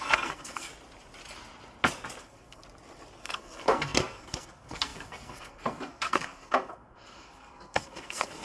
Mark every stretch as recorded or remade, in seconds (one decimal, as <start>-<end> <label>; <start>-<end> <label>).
0.0-0.7 remade; 0.7-2.2 recorded; 2.2-2.6 remade; 2.6-3.2 recorded; 3.2-8.4 remade